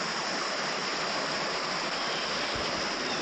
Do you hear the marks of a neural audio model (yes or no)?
no